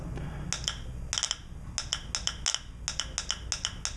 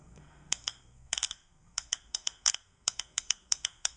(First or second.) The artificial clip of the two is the second